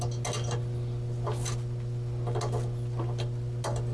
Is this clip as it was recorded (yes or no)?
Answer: yes